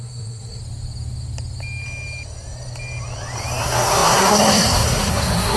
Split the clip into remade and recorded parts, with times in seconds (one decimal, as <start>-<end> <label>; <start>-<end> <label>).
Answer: 0.0-0.6 remade; 0.6-3.6 recorded; 3.6-5.6 remade